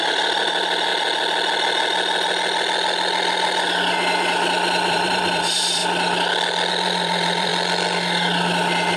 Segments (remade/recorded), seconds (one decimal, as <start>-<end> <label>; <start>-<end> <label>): 0.0-0.9 remade; 0.9-4.9 recorded; 4.9-5.8 remade; 5.8-6.7 recorded; 6.7-7.5 remade; 7.5-9.0 recorded